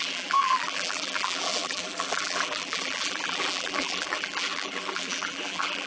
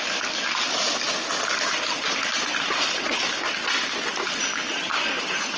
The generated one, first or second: first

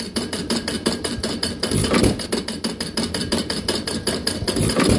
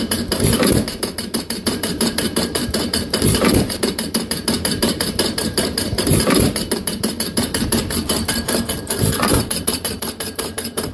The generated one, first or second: second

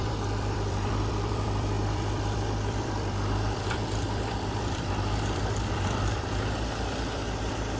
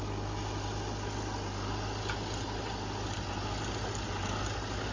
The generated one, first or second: first